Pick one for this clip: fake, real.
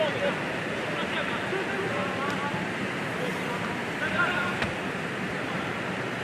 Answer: real